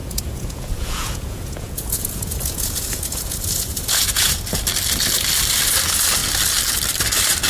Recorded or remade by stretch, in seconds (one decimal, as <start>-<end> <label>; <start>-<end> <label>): 0.0-4.3 remade; 4.3-7.5 recorded